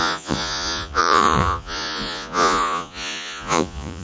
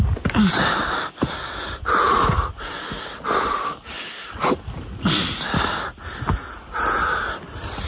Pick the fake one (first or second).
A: first